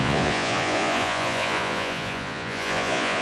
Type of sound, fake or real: fake